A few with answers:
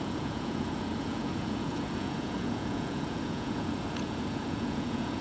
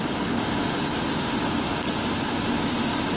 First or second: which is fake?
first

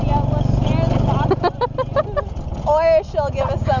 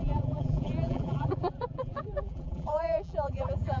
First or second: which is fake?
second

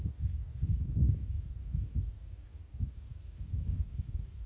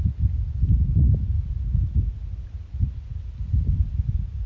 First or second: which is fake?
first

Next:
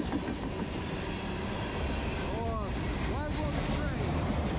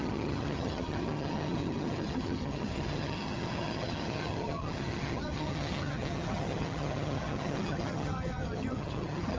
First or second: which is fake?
second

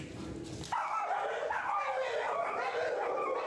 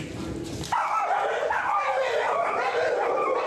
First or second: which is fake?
second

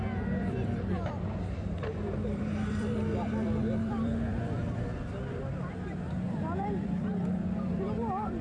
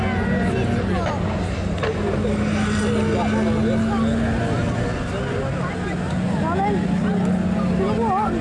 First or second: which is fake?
first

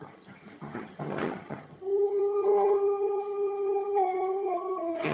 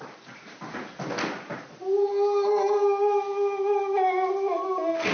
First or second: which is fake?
first